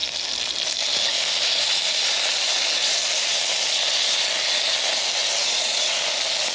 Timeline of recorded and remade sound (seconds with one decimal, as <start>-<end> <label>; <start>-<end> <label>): 0.0-5.4 recorded; 5.4-6.0 remade; 6.0-6.5 recorded